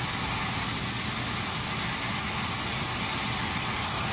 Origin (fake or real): real